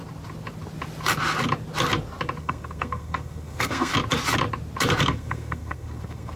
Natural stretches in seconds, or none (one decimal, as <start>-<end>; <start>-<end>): 0.0-2.4; 3.9-5.0